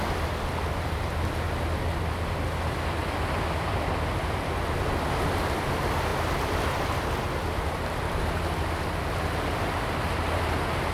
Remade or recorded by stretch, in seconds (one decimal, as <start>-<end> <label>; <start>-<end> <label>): 0.0-10.9 recorded